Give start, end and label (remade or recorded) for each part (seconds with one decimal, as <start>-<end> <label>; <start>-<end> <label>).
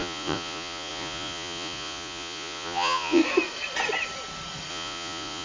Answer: 0.0-3.2 remade; 3.2-4.7 recorded; 4.7-5.4 remade